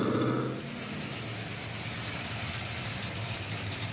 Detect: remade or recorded recorded